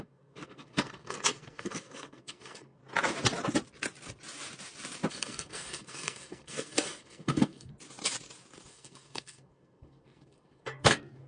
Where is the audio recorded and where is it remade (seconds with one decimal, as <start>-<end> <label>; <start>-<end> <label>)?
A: 0.0-2.8 remade; 2.8-5.1 recorded; 5.1-7.7 remade; 7.7-8.7 recorded; 8.7-11.3 remade

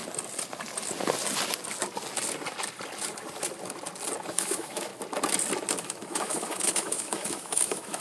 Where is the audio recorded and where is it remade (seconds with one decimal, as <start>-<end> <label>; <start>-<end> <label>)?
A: 0.0-4.3 recorded; 4.3-4.9 remade; 4.9-5.8 recorded; 5.8-8.0 remade

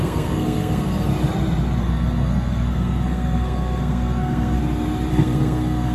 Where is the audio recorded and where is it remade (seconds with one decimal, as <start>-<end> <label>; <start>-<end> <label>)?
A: 0.0-1.1 remade; 1.1-1.8 recorded; 1.8-4.6 remade; 4.6-5.1 recorded; 5.1-5.9 remade

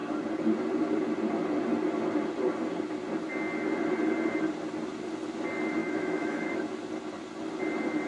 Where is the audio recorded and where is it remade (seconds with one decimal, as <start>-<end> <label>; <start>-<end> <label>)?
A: 0.0-5.8 recorded; 5.8-6.5 remade; 6.5-8.1 recorded

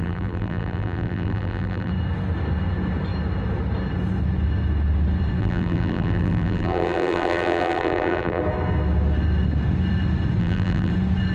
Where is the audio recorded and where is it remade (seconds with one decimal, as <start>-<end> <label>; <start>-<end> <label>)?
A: 0.0-1.9 remade; 1.9-5.4 recorded; 5.4-8.4 remade; 8.4-10.4 recorded; 10.4-10.9 remade; 10.9-11.3 recorded

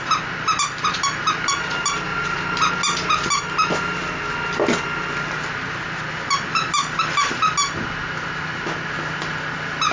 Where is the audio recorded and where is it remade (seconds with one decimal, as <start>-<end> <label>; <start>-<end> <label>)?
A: 0.0-9.9 recorded